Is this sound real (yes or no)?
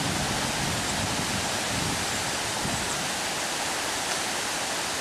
yes